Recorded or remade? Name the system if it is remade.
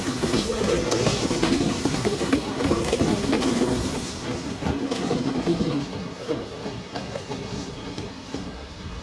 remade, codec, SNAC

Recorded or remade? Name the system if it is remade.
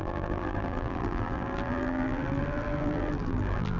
remade, vocoder, BigVGAN v2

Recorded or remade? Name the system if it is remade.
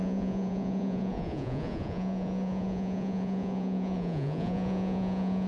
remade, vocoder, Vocos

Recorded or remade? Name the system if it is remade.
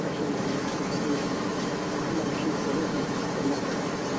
remade, autoencoder, DAC-VAE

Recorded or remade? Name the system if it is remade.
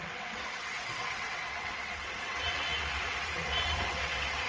remade, vocoder, WaveNeXt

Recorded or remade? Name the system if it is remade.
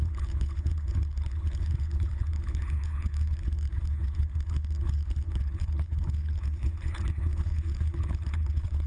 remade, codec, HILCodec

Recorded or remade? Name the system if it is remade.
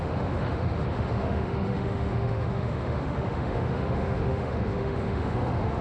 remade, autoencoder, DAC-VAE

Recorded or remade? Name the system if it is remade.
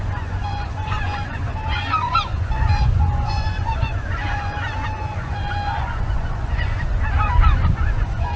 remade, vocoder, Vocos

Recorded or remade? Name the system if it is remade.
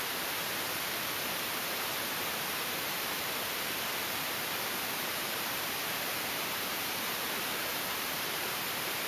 remade, vocoder, BigVGAN v2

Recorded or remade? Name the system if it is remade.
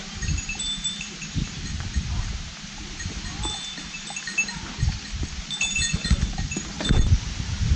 remade, vocoder, BigVGAN v2